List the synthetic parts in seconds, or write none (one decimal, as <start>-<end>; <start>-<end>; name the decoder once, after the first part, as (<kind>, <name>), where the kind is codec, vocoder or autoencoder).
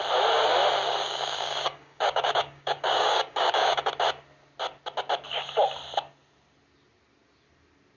0.9-3.9 (codec, DAC)